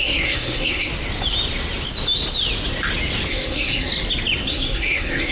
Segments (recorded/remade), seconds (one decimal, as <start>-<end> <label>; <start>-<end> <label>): 0.0-0.9 remade; 0.9-3.3 recorded; 3.3-3.9 remade; 3.9-4.5 recorded; 4.5-5.3 remade